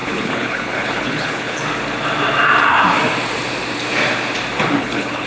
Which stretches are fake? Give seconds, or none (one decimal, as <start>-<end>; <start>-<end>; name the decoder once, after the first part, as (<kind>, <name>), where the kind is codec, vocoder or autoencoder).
0.0-1.6 (codec, HILCodec); 4.8-5.3